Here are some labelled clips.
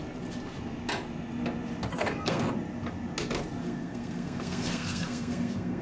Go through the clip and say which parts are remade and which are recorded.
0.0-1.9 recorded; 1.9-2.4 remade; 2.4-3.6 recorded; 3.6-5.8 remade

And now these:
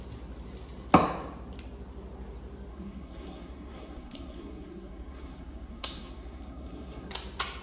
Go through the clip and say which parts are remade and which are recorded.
0.0-2.7 recorded; 2.7-7.1 remade; 7.1-7.6 recorded

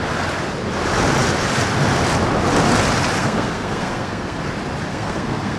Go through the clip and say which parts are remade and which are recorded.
0.0-3.2 recorded; 3.2-4.4 remade; 4.4-4.9 recorded; 4.9-5.6 remade